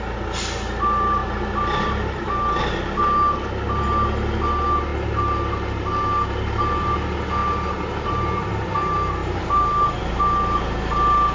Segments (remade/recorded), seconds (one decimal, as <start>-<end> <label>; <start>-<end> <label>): 0.0-1.2 recorded; 1.2-2.6 remade; 2.6-9.2 recorded; 9.2-10.0 remade; 10.0-11.3 recorded